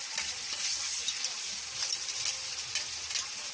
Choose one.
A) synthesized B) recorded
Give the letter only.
B